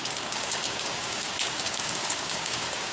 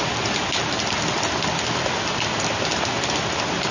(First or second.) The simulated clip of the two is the first